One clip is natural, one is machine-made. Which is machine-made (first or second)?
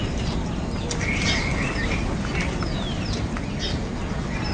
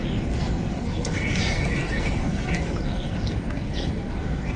second